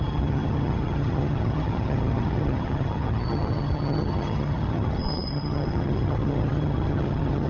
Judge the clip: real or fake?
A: fake